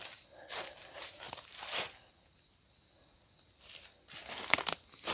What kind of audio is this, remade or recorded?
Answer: recorded